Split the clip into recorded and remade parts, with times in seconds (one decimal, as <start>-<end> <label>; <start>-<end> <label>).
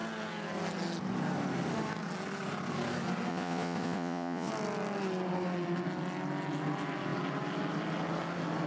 0.0-3.3 recorded; 3.3-4.5 remade; 4.5-8.7 recorded